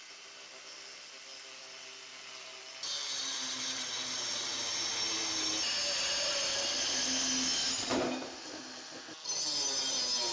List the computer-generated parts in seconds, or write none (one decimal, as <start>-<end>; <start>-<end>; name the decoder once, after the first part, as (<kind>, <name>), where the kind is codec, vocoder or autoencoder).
3.2-4.9 (vocoder, BigVGAN v2); 7.9-9.0